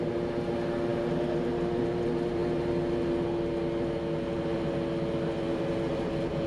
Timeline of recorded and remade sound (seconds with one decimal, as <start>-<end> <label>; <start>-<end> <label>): 0.0-6.5 recorded